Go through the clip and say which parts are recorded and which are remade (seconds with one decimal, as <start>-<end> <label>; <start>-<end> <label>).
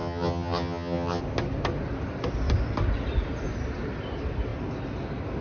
0.0-1.2 remade; 1.2-5.4 recorded